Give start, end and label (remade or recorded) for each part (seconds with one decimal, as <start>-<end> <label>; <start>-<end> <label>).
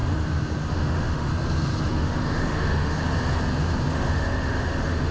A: 0.0-0.7 recorded; 0.7-1.3 remade; 1.3-1.9 recorded; 1.9-3.0 remade; 3.0-3.9 recorded; 3.9-5.1 remade